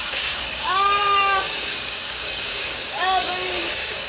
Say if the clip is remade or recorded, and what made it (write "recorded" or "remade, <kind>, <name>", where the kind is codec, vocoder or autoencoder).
remade, codec, DAC